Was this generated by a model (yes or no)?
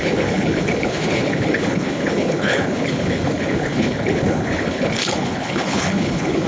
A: yes